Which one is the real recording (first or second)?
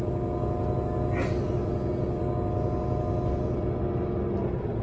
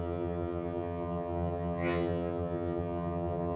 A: first